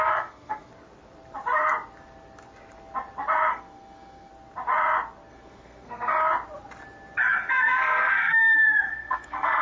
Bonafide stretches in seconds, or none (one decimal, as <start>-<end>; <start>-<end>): 0.7-3.5; 4.3-5.3; 6.1-7.5